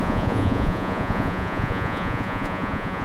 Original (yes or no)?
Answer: no